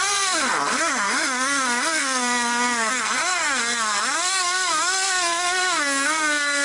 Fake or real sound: fake